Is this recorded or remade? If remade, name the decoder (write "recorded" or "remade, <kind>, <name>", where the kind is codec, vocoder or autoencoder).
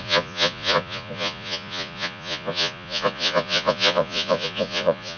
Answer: remade, vocoder, Vocos